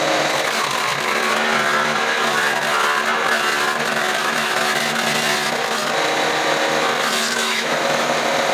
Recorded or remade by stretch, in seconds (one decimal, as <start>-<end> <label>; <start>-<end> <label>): 0.0-4.2 recorded; 4.2-4.7 remade; 4.7-7.4 recorded; 7.4-8.1 remade; 8.1-8.5 recorded